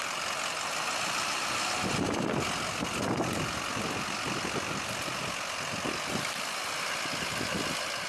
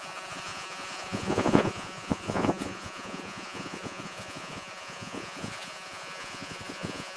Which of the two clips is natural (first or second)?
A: first